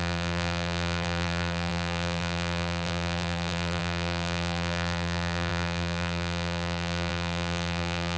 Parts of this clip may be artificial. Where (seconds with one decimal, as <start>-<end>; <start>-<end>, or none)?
0.0-8.2